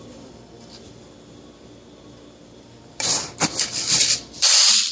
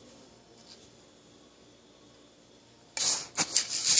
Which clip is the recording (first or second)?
second